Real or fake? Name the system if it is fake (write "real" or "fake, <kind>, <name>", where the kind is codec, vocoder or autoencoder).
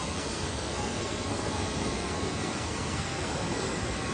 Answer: fake, codec, SNAC